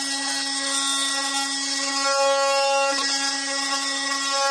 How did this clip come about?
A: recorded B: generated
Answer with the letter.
A